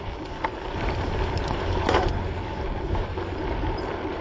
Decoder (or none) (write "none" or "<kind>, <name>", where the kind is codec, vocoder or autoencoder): none